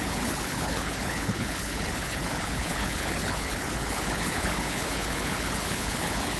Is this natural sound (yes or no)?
no